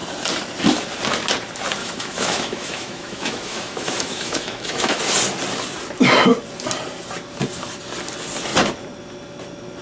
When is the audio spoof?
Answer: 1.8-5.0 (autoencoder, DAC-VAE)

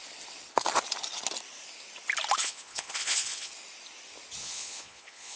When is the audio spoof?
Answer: 2.4-3.5 (vocoder, Vocos); 4.4-5.4

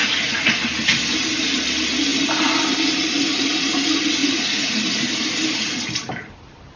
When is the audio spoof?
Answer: 0.0-0.6 (vocoder, Vocos); 4.2-4.7

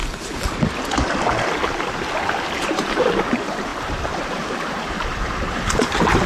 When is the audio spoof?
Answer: 2.6-6.3 (vocoder, BigVGAN v2)